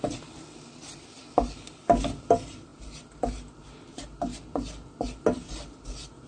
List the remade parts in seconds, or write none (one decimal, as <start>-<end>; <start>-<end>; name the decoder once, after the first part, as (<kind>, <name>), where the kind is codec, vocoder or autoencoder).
none